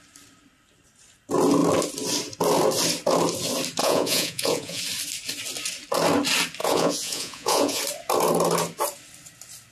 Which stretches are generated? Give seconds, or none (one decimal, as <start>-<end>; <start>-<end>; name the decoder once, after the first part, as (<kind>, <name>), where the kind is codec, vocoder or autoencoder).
3.8-4.8 (vocoder, Vocos); 6.6-7.8

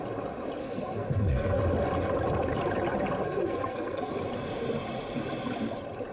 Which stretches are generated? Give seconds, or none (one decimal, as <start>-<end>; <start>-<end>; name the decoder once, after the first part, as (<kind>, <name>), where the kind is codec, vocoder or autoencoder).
0.6-1.6 (codec, SNAC); 3.2-4.1

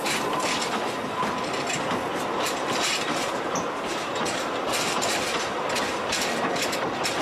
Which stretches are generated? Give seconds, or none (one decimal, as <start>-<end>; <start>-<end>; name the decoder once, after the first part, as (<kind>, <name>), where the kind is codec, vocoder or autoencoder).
2.1-6.4 (vocoder, BigVGAN v2)

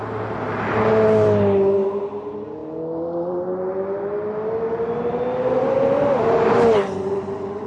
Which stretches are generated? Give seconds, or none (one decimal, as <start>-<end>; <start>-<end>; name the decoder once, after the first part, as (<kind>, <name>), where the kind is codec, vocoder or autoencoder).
none

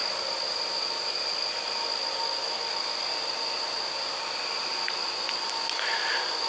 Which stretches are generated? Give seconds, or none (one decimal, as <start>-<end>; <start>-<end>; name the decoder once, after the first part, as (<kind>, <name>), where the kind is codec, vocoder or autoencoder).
none

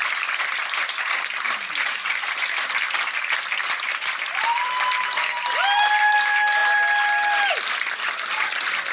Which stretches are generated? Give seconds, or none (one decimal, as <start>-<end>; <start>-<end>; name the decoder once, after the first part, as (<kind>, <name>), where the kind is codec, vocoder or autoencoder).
none